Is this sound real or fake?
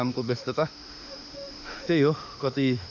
fake